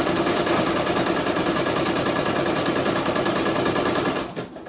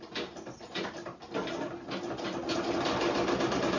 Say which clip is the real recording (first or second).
second